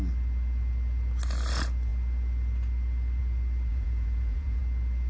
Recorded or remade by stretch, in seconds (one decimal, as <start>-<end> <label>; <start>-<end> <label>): 0.0-3.7 recorded; 3.7-4.6 remade; 4.6-5.1 recorded

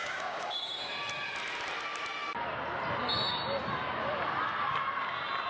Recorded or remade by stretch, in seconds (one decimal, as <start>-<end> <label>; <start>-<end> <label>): 0.0-0.7 remade; 0.7-5.5 recorded

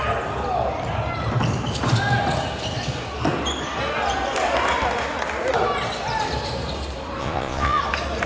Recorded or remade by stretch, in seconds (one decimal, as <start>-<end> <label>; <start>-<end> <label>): 0.0-7.2 recorded; 7.2-7.8 remade; 7.8-8.3 recorded

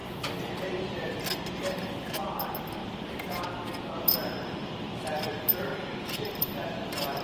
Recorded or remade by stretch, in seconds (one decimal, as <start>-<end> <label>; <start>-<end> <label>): 0.0-4.0 recorded; 4.0-5.7 remade; 5.7-6.3 recorded; 6.3-7.2 remade

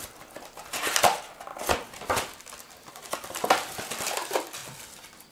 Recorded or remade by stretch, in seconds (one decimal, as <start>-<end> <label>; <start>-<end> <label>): 0.0-5.3 recorded

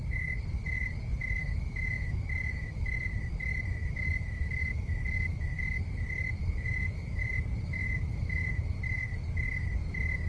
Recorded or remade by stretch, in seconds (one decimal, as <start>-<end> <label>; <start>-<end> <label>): 0.0-1.4 recorded; 1.4-3.1 remade; 3.1-3.8 recorded; 3.8-5.6 remade; 5.6-6.4 recorded; 6.4-7.2 remade; 7.2-7.8 recorded; 7.8-8.8 remade; 8.8-10.3 recorded

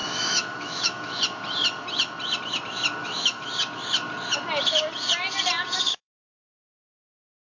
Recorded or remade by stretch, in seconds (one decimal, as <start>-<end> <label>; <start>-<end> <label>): 0.0-1.2 remade; 1.2-3.0 recorded; 3.0-3.5 remade; 3.5-5.9 recorded; 5.9-6.4 remade; 6.4-7.6 recorded